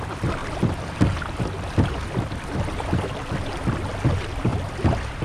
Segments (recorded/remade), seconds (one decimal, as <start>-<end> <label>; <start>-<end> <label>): 0.0-0.4 recorded; 0.4-3.5 remade; 3.5-4.5 recorded; 4.5-5.2 remade